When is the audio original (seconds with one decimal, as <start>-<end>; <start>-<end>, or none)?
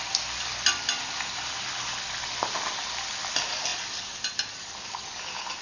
0.0-5.6